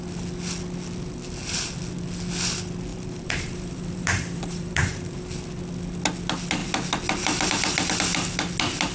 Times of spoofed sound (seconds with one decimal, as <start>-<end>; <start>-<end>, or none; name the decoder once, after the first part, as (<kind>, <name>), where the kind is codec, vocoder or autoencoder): 2.9-5.3 (vocoder, BigVGAN v2)